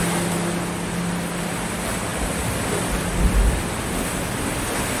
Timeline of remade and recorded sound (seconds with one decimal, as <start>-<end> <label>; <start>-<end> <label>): 0.0-5.0 recorded